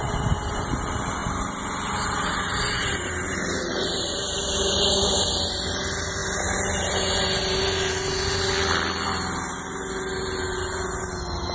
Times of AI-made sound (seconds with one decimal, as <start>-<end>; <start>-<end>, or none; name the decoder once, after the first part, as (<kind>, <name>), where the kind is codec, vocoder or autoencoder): 1.2-5.2 (vocoder, BigVGAN v2)